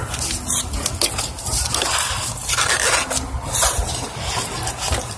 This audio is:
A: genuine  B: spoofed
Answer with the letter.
A